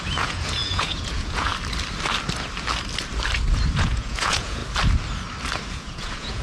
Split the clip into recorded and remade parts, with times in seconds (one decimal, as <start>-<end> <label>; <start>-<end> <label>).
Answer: 0.0-1.5 remade; 1.5-3.8 recorded; 3.8-4.6 remade; 4.6-5.7 recorded; 5.7-6.4 remade